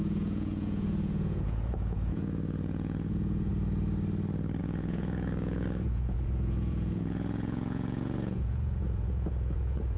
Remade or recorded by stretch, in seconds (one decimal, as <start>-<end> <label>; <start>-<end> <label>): 0.0-3.5 remade; 3.5-4.6 recorded; 4.6-10.0 remade